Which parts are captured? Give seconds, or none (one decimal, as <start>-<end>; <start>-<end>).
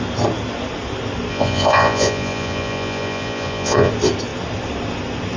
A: 0.0-1.3; 3.9-5.4